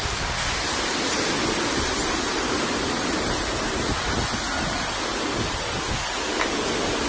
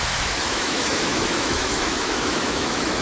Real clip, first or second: first